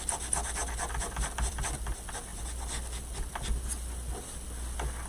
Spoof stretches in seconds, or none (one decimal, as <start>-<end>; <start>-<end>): none